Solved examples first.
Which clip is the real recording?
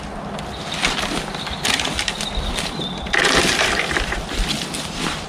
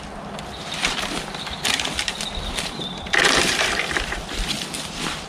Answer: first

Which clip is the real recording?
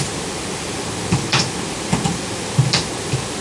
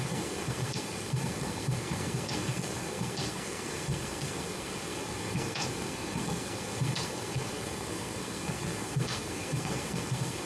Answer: first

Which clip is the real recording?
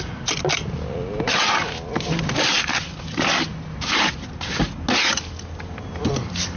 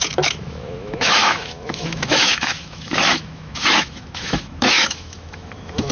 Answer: first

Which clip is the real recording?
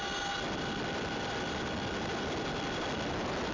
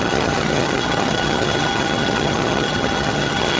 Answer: first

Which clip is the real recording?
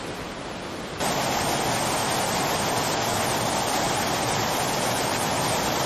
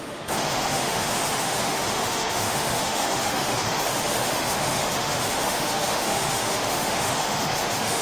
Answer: first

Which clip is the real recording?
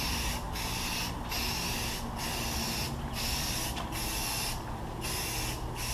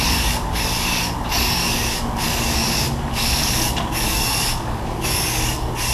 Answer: first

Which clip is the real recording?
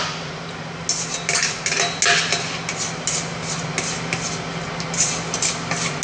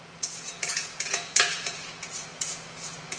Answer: first